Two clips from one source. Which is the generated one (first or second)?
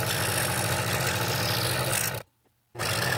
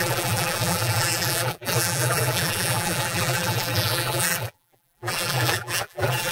second